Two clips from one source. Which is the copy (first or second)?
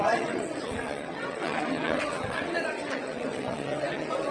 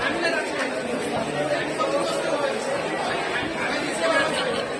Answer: first